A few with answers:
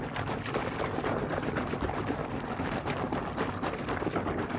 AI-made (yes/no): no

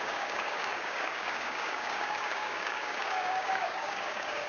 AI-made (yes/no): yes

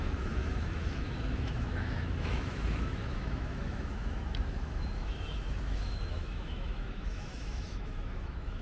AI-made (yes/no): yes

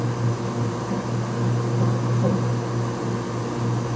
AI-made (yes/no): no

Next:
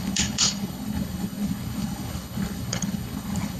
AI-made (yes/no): yes